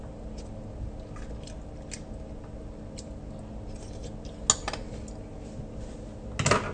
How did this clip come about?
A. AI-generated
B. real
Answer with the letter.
B